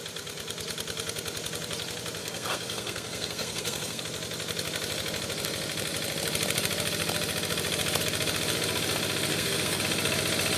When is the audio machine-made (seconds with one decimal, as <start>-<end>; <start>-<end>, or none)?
2.2-4.0; 9.3-9.8